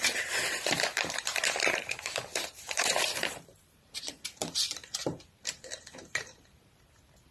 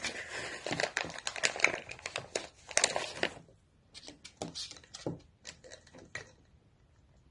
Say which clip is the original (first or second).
second